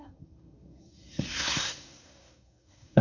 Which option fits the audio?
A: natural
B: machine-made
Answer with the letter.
B